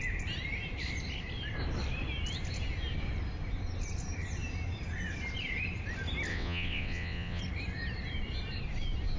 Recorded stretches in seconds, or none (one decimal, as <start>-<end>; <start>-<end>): 0.0-6.3; 7.4-9.2